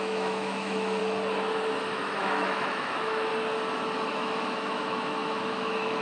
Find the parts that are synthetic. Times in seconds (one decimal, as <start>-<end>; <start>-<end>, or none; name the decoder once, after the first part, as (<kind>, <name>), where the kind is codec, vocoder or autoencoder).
0.0-1.0 (autoencoder, DAC-VAE); 1.8-3.3; 4.1-6.0